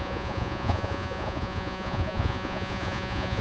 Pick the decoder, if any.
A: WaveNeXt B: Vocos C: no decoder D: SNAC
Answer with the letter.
B